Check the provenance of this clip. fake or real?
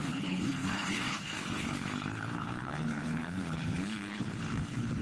fake